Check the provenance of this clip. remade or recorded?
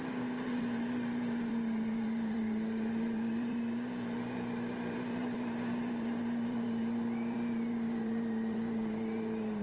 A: remade